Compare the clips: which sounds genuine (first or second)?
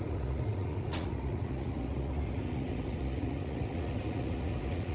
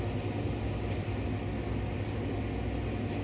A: second